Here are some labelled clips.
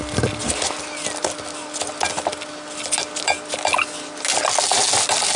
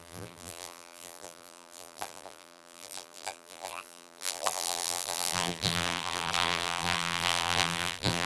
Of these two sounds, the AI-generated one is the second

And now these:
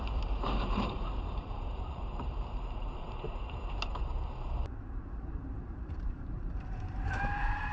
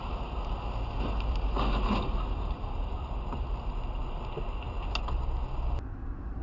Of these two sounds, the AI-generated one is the first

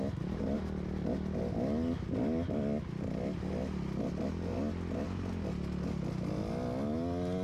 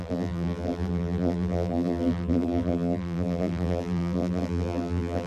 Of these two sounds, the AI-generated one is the second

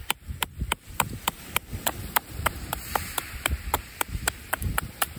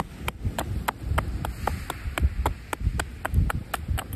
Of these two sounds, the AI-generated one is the first